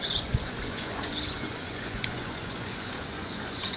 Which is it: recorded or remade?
remade